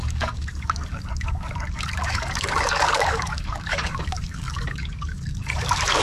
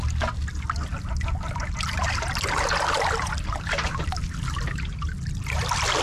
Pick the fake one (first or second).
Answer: first